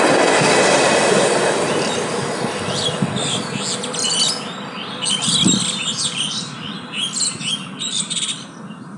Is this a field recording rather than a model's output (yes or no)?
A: yes